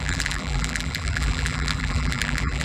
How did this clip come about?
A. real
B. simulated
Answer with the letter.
B